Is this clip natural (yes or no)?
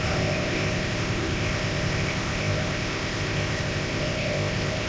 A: no